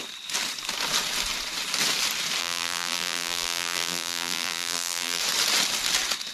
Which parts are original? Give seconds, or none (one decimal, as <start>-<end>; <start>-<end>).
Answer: 0.0-2.4; 5.2-6.3

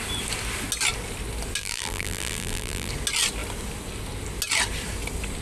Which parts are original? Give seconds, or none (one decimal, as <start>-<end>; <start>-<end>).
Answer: 0.0-1.6; 2.9-5.4

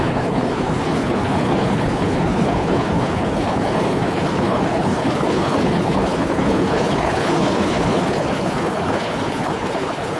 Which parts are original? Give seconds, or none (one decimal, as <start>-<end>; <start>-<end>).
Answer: none

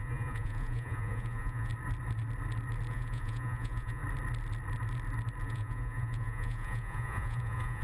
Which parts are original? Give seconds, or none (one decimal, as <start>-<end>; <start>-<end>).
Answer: 1.7-2.9; 4.0-5.4